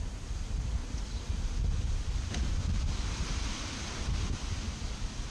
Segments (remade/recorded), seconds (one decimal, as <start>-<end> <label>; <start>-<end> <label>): 0.0-5.3 recorded